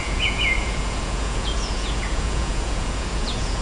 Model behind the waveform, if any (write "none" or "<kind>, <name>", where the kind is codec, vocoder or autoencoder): vocoder, Vocos